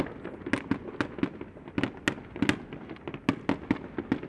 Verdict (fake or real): real